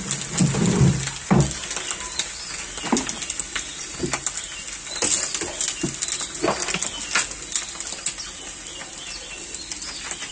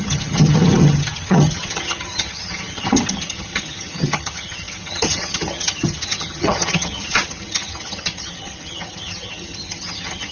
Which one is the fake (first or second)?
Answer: second